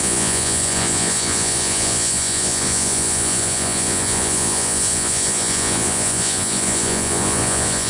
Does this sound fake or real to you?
fake